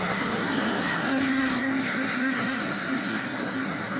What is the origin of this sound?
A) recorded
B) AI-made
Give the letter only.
B